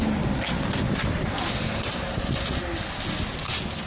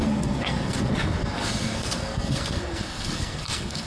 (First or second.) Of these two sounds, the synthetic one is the second